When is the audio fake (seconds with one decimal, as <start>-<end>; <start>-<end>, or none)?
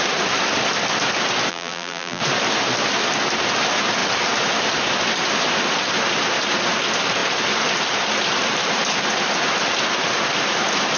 1.5-2.2